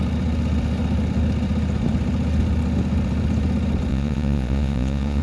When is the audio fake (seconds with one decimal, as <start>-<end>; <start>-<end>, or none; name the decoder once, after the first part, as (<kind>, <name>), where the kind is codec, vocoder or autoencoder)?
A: 3.9-5.2 (vocoder, Vocos)